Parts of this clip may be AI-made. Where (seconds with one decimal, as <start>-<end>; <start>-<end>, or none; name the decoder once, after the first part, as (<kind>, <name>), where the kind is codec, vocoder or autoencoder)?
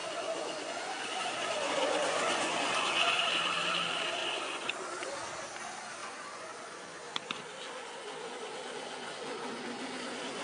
0.0-3.2 (vocoder, Vocos); 4.2-5.1; 6.0-10.4